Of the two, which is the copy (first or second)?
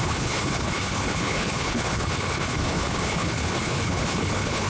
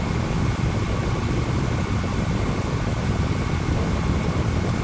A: first